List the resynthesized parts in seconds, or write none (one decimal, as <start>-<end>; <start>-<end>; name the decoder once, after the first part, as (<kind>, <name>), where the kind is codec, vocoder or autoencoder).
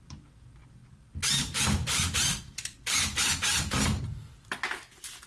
none